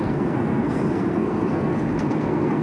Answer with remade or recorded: remade